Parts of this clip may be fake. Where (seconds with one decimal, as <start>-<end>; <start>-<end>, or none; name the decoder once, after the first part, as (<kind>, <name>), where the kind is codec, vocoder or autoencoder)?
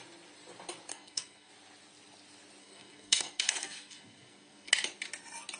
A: 0.9-1.5 (codec, SNAC); 2.6-4.7